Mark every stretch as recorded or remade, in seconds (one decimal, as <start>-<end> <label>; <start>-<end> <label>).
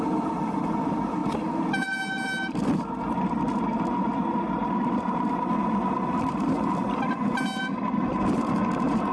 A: 0.0-9.1 recorded